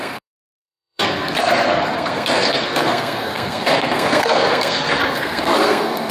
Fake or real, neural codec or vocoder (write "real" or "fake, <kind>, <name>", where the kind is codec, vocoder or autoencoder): fake, codec, SNAC